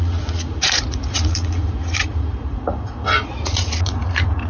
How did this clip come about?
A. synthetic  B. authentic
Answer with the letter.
A